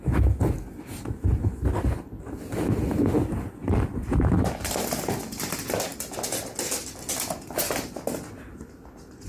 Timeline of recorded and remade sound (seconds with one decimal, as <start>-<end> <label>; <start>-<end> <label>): 0.0-9.3 recorded